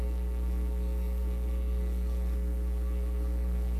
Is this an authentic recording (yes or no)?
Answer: no